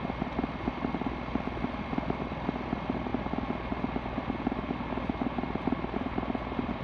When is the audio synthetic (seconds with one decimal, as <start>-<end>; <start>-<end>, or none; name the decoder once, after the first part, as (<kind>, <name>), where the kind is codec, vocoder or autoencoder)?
none